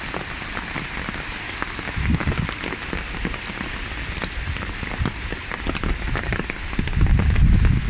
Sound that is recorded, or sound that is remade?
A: recorded